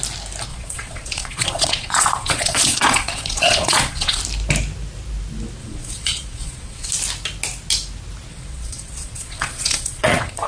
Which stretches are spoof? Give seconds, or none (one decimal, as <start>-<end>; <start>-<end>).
0.5-4.2; 5.6-6.9; 8.3-10.5